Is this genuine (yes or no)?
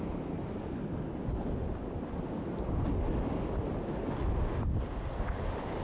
yes